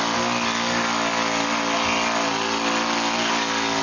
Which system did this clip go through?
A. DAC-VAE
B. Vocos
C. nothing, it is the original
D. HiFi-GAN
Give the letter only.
C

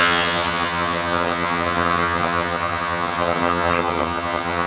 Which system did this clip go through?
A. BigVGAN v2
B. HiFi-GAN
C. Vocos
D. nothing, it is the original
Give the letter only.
B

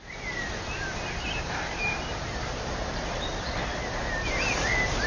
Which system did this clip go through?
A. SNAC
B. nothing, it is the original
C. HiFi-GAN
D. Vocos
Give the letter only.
B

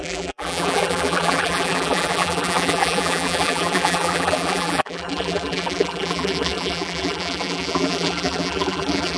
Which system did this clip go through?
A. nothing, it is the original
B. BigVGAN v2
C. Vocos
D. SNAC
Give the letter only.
B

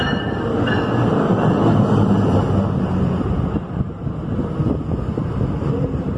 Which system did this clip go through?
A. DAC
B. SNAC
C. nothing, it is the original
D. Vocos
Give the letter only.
C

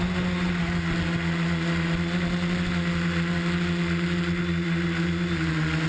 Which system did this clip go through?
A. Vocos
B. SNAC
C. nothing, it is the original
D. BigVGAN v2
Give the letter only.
C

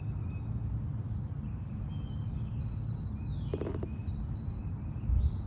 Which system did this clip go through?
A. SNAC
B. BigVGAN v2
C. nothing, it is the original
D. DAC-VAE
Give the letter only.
C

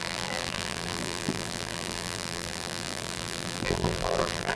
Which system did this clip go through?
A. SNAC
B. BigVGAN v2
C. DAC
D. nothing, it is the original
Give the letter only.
B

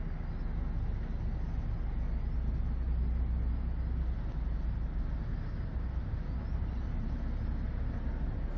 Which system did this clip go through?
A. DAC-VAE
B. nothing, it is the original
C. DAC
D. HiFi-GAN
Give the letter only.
B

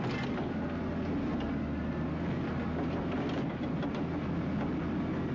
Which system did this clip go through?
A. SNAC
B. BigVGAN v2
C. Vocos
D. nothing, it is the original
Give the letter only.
D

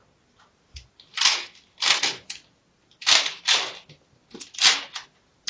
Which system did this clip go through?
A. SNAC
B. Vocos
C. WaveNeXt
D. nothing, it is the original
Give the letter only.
D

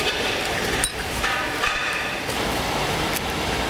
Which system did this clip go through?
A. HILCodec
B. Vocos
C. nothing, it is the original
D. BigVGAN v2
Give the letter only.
D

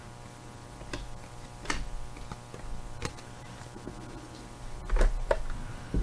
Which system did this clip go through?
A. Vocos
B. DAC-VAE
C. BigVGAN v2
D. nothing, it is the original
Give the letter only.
D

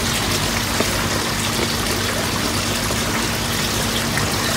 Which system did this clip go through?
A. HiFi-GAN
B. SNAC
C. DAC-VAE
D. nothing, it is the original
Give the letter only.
D